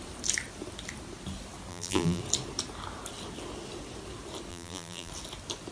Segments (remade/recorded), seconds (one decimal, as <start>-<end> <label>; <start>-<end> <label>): 0.0-1.7 recorded; 1.7-2.2 remade; 2.2-4.5 recorded; 4.5-5.1 remade; 5.1-5.7 recorded